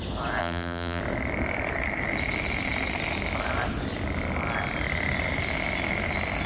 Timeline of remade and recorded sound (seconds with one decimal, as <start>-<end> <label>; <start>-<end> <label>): 0.0-0.4 recorded; 0.4-1.0 remade; 1.0-6.5 recorded